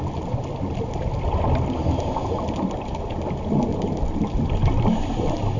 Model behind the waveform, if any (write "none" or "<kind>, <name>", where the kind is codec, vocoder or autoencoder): none